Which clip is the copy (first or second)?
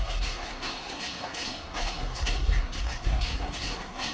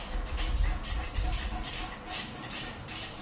first